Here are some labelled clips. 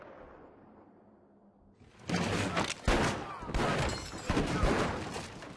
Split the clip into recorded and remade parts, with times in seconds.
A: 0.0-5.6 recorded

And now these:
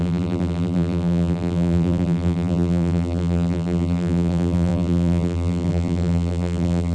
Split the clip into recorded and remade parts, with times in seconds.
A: 0.0-6.9 remade